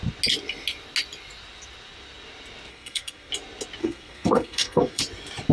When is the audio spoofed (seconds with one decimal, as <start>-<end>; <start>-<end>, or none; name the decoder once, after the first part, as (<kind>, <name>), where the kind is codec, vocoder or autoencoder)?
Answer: 2.7-3.3 (codec, SNAC); 3.8-5.0